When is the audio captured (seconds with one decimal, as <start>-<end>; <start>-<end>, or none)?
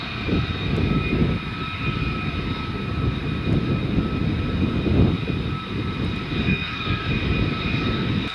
0.0-6.5; 7.0-8.3